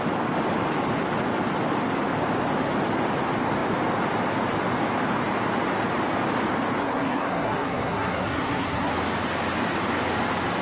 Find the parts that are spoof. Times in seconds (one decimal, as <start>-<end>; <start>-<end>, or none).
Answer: 6.8-8.9